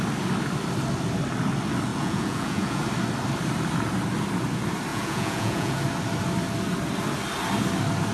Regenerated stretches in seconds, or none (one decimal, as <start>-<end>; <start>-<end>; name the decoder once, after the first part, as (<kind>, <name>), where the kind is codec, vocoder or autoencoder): 1.9-2.8 (vocoder, Vocos); 4.9-5.8